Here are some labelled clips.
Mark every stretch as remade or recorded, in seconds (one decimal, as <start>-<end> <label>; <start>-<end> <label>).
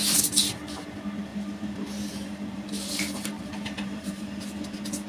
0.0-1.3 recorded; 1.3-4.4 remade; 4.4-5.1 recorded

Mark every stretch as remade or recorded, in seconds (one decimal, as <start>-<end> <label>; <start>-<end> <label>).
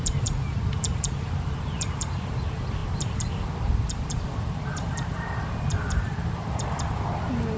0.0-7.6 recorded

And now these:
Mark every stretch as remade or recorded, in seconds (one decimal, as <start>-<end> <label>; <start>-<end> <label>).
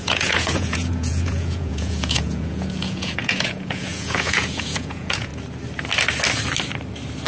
0.0-5.3 remade; 5.3-7.3 recorded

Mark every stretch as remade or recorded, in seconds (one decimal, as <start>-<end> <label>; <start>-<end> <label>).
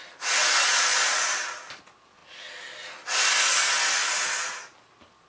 0.0-5.3 recorded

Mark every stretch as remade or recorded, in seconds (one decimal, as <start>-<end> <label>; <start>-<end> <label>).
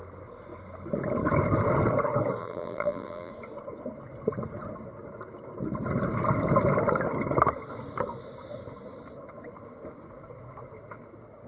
0.0-2.4 recorded; 2.4-3.3 remade; 3.3-11.5 recorded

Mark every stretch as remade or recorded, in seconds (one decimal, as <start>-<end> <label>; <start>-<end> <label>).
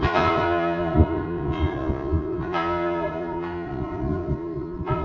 0.0-5.0 remade